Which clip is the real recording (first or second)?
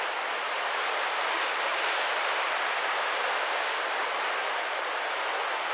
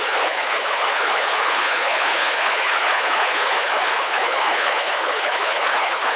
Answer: first